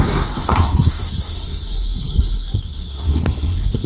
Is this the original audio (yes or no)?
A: no